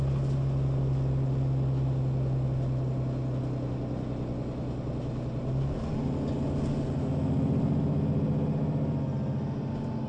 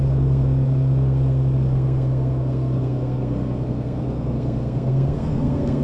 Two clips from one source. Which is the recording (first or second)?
first